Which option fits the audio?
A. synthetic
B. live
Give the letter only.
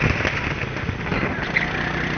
B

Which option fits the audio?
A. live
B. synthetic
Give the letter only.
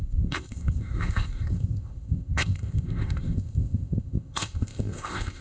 B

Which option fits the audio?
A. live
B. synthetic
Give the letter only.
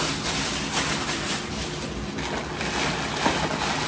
A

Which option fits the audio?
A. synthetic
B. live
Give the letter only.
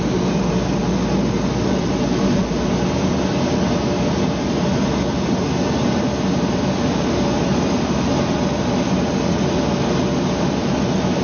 B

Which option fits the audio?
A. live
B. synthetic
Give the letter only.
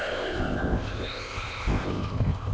B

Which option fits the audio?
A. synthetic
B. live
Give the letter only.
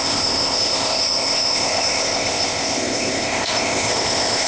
A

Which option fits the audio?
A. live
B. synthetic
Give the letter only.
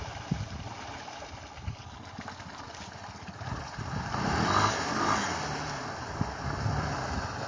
A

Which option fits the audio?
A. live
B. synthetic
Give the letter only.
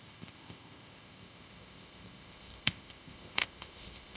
B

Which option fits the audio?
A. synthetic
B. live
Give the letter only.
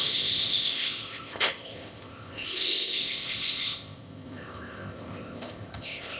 A